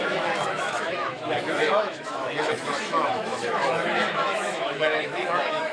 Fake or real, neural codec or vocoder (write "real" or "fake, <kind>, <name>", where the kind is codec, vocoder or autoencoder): fake, autoencoder, DAC-VAE